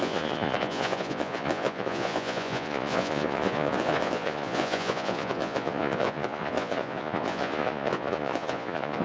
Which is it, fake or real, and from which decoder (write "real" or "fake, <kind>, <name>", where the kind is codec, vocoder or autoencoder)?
fake, vocoder, Vocos